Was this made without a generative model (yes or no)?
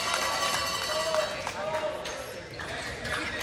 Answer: yes